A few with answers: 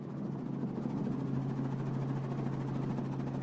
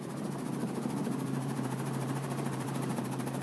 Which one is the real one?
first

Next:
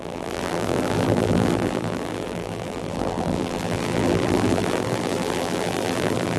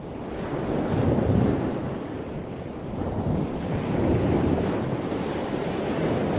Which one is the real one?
second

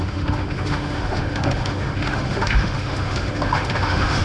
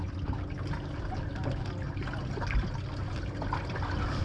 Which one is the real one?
second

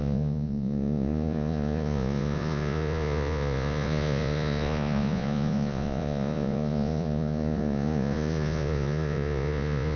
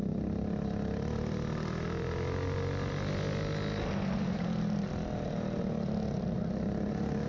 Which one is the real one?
second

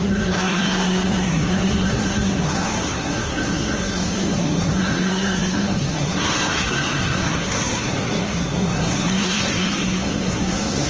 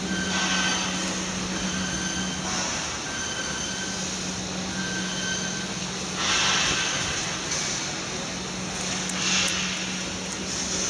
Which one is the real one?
second